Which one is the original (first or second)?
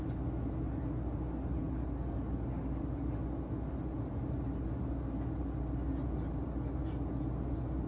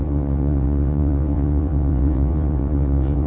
first